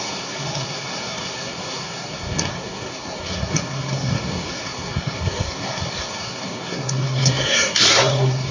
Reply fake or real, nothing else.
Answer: fake